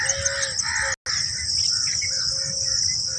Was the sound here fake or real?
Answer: real